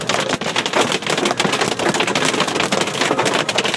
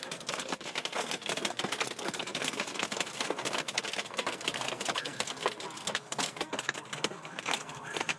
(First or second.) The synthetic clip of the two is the second